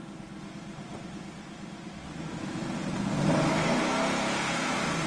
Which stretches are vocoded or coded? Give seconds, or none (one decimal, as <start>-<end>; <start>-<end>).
0.9-4.0